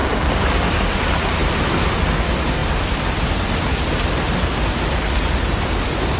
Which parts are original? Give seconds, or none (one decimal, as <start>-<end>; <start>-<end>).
0.8-1.4; 2.2-6.2